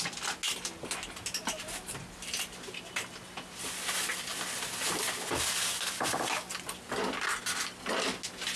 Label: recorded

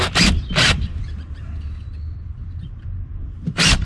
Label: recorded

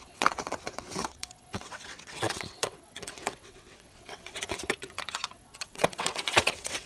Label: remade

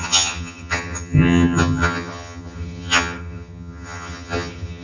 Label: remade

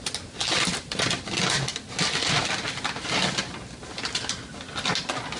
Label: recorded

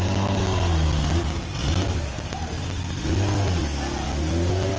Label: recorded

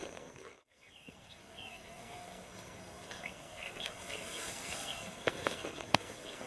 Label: remade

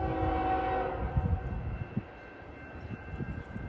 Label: recorded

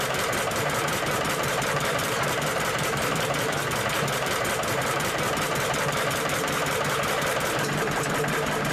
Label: remade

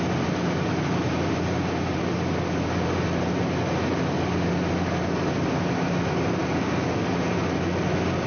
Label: recorded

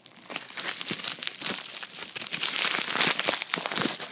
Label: recorded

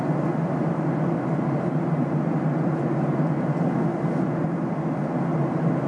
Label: recorded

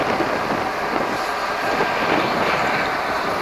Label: recorded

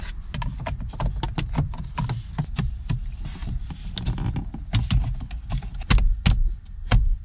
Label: recorded